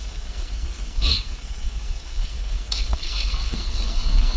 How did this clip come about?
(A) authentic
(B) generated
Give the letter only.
B